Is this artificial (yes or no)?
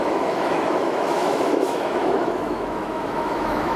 yes